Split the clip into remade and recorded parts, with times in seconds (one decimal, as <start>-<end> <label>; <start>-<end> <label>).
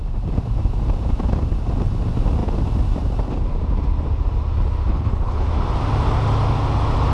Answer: 0.0-4.9 recorded; 4.9-5.5 remade; 5.5-7.1 recorded